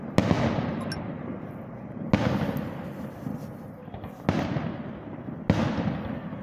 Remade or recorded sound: recorded